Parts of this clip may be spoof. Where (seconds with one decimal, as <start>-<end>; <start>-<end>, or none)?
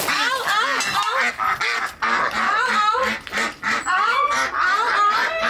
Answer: none